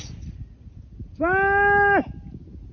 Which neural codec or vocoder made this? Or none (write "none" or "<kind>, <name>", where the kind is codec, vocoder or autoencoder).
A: none